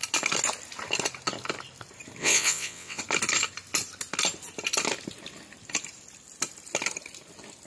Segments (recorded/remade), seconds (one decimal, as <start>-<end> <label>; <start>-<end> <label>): 0.0-2.2 recorded; 2.2-3.0 remade; 3.0-7.7 recorded